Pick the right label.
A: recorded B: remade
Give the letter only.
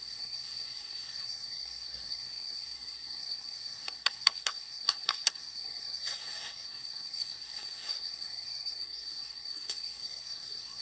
B